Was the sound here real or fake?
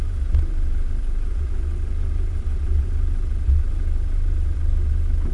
fake